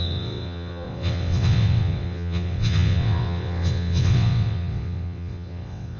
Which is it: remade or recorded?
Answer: remade